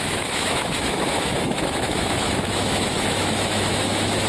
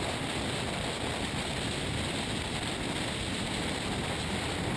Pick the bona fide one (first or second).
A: second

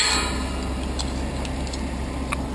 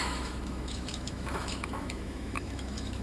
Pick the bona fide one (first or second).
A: first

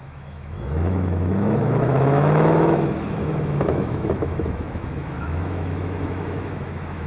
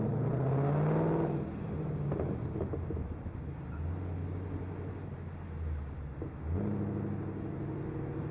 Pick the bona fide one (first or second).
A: second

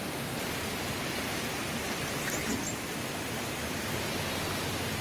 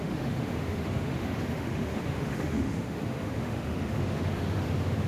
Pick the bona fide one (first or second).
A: first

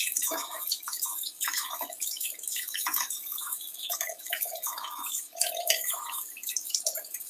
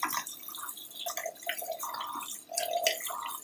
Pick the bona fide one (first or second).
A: second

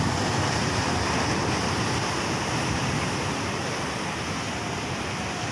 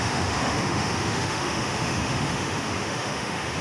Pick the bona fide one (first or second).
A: first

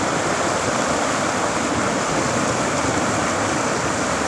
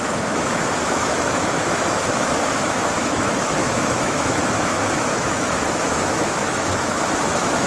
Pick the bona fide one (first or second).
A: first